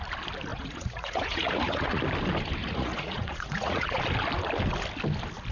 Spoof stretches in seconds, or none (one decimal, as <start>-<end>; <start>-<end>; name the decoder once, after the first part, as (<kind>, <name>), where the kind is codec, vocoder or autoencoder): 0.5-2.0 (vocoder, Vocos); 2.6-4.0